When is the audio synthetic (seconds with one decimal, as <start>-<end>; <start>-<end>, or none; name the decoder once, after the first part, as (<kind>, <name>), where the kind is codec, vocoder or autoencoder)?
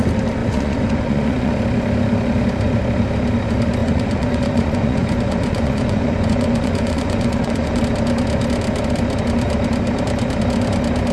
0.4-1.5 (vocoder, Vocos); 3.8-7.8